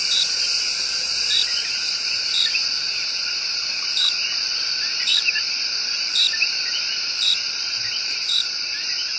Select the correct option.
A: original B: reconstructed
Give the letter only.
B